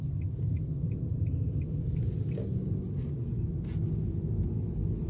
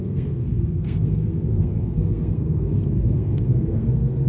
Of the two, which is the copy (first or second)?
second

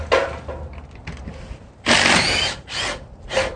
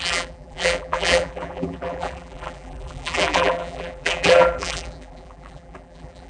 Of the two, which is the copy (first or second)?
second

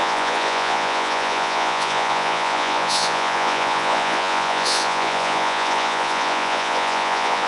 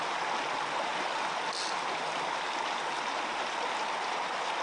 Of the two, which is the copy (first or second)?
first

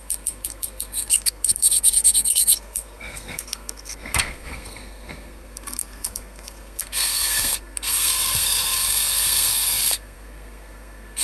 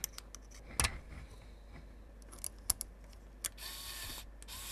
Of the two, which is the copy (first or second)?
first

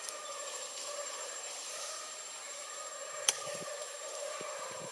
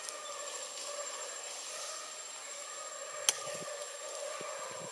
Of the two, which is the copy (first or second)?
first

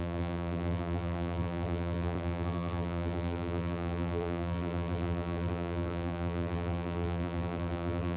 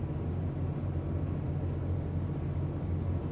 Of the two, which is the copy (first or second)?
first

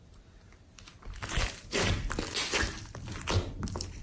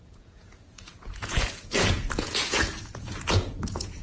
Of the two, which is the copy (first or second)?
second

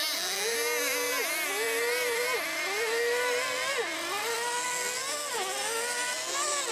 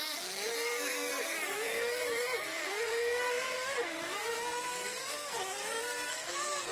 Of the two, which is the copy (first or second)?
second